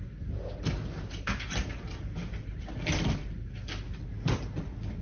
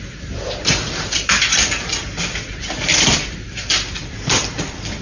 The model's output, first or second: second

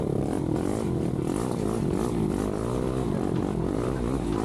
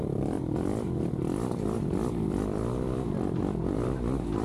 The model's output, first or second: second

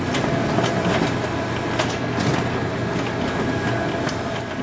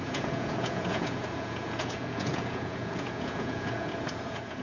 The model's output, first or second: second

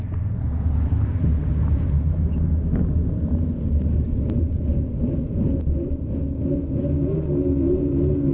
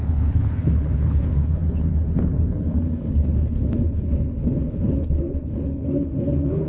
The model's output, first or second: second